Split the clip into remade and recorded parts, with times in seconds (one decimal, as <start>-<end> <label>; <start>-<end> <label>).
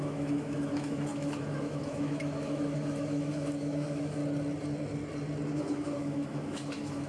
0.0-4.2 remade; 4.2-5.6 recorded; 5.6-7.1 remade